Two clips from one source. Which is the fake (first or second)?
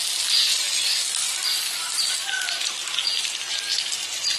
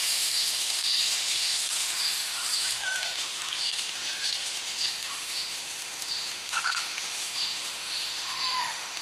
second